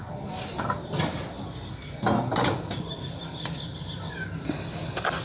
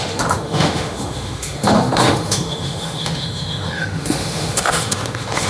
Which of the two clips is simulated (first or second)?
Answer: second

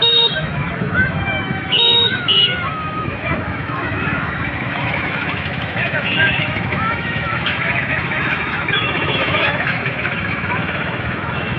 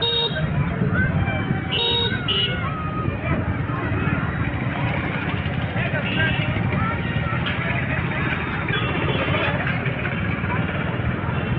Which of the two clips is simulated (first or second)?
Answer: first